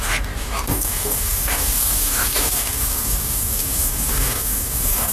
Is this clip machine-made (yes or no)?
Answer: yes